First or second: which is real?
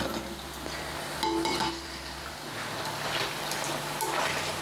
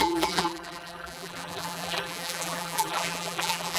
first